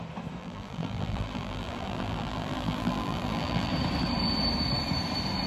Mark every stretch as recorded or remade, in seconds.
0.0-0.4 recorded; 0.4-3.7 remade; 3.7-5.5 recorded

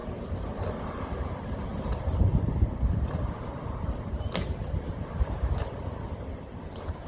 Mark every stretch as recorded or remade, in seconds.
0.0-0.5 remade; 0.5-1.7 recorded; 1.7-5.6 remade; 5.6-6.3 recorded; 6.3-7.1 remade

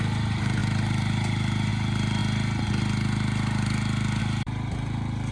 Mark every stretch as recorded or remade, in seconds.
0.0-2.2 remade; 2.2-4.2 recorded; 4.2-5.3 remade